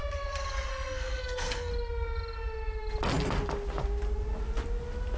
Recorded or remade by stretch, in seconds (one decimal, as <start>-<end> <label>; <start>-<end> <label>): 0.0-0.7 recorded; 0.7-1.7 remade; 1.7-5.2 recorded